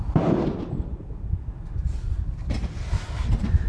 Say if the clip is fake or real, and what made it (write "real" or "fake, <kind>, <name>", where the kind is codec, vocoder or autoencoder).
real